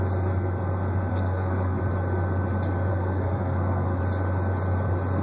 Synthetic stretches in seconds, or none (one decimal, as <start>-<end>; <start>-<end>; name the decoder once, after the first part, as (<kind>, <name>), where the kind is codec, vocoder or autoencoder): 1.1-1.8 (codec, SNAC); 2.9-4.0